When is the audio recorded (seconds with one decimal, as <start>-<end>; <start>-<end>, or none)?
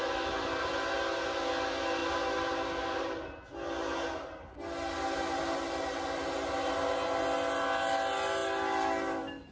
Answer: 0.0-9.5